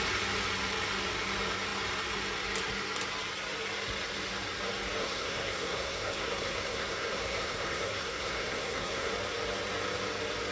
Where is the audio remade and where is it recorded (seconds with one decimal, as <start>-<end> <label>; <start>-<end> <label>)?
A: 0.0-5.0 recorded; 5.0-9.1 remade; 9.1-10.5 recorded